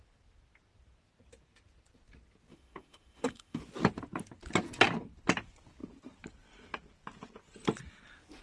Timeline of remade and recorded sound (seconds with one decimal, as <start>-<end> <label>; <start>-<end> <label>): 0.0-2.5 recorded; 2.5-3.6 remade; 3.6-8.4 recorded